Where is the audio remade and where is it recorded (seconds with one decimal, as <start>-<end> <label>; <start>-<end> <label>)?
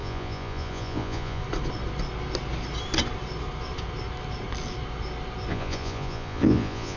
0.0-1.4 remade; 1.4-5.5 recorded; 5.5-7.0 remade